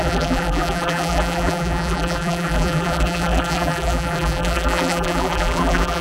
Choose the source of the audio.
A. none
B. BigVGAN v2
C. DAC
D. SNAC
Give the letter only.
B